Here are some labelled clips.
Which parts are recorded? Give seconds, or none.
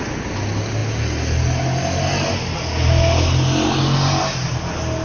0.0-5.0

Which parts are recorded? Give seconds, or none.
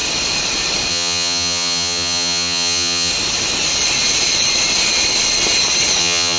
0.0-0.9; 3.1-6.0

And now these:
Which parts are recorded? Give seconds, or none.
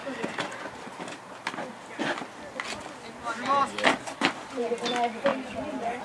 0.0-5.3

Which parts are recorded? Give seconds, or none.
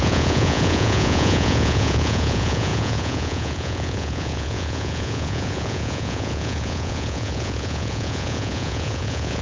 none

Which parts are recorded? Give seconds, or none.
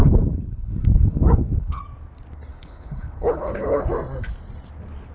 1.8-2.5; 3.8-5.1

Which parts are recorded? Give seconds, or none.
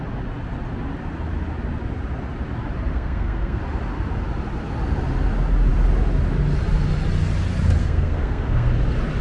0.0-2.9; 3.6-7.8; 8.7-9.2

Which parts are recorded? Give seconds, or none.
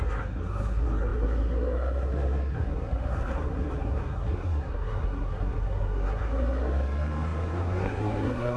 none